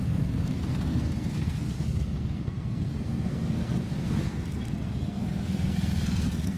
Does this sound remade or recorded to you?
remade